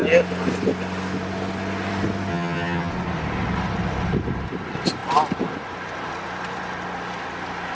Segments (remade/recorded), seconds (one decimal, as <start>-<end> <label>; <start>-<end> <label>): 0.0-2.3 recorded; 2.3-2.9 remade; 2.9-7.7 recorded